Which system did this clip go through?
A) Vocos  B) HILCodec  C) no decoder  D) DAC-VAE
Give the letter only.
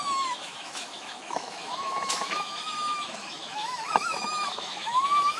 D